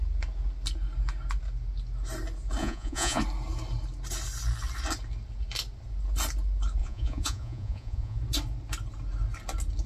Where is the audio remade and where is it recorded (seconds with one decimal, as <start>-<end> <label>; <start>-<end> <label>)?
0.0-2.6 recorded; 2.6-3.2 remade; 3.2-6.8 recorded; 6.8-8.2 remade; 8.2-9.9 recorded